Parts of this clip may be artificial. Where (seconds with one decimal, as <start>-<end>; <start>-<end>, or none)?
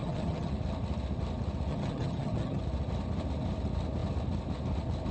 0.0-0.5; 1.7-2.6